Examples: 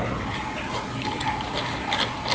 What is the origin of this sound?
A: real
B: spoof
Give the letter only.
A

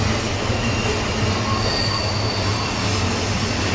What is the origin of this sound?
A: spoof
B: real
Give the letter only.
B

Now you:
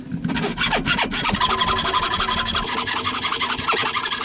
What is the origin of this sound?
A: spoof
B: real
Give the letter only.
B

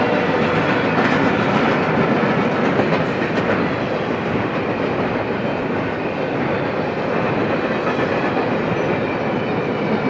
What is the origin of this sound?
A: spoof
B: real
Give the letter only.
B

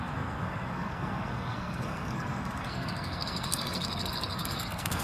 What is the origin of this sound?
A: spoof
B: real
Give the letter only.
A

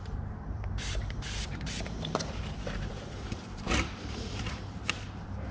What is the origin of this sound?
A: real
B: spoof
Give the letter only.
B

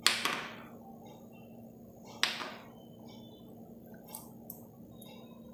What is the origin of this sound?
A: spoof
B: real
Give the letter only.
B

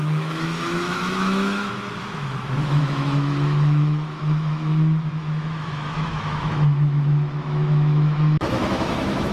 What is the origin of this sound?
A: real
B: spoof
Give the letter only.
B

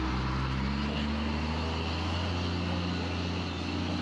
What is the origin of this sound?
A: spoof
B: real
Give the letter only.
B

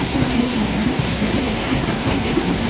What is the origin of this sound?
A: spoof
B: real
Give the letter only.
A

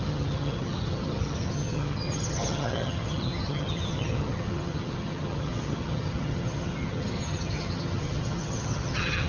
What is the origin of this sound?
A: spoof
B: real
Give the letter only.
A